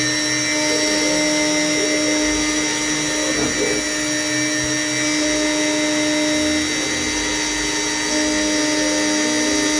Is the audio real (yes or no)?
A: yes